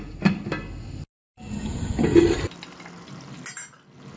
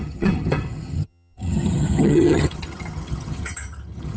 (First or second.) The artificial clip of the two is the second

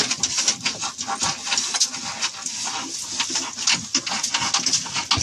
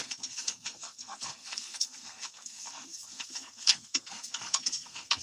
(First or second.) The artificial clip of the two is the second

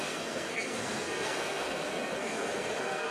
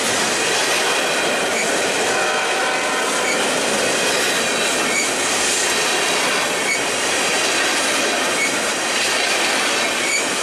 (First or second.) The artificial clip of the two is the first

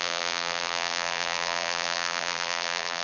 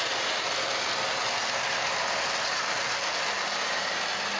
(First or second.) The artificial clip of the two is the first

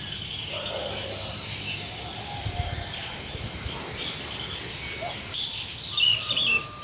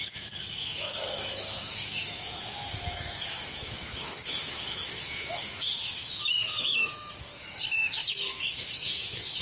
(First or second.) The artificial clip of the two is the second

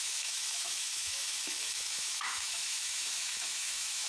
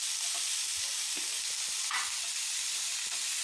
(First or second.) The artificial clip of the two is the first